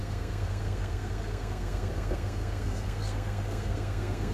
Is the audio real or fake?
fake